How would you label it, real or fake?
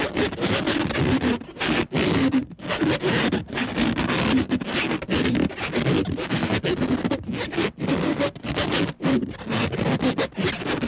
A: real